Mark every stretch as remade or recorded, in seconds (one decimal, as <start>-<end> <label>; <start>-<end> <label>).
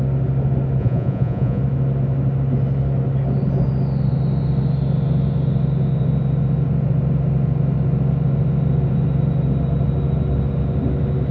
0.0-0.8 recorded; 0.8-1.6 remade; 1.6-11.3 recorded